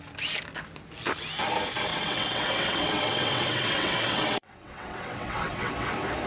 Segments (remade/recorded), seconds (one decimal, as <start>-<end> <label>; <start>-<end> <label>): 0.0-1.9 recorded; 1.9-5.7 remade; 5.7-6.3 recorded